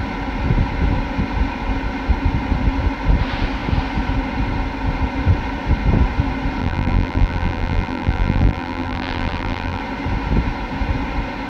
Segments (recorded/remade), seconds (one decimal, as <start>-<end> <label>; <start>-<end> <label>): 0.0-6.6 recorded; 6.6-9.8 remade; 9.8-11.5 recorded